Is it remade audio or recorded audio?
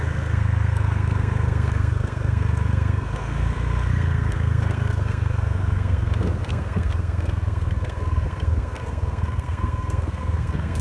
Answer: remade